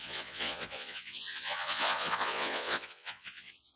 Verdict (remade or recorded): remade